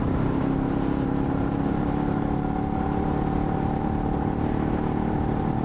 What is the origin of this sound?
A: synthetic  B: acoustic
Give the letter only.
A